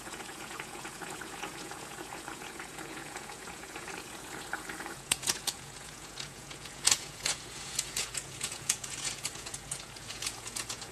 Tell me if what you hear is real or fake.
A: fake